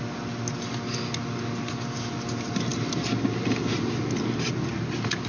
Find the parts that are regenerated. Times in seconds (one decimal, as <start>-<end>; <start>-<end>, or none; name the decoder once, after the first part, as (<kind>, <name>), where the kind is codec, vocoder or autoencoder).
none